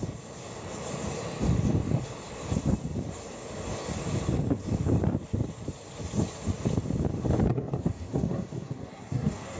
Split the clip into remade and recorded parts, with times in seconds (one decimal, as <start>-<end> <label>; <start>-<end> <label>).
0.0-7.5 recorded; 7.5-9.6 remade